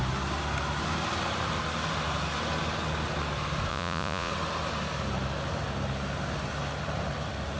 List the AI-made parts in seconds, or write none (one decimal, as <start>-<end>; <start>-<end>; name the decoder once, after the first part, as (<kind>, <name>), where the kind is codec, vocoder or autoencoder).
3.7-4.3 (vocoder, Vocos)